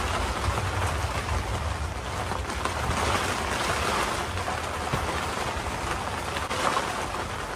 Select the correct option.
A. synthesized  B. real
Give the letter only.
B